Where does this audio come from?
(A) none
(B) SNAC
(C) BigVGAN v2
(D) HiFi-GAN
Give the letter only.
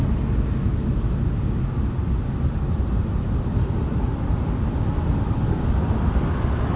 A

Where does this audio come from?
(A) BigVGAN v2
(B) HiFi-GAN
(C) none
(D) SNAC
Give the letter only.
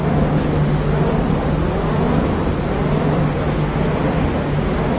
C